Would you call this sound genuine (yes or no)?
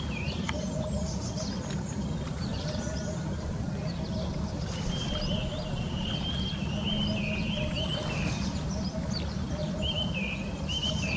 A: yes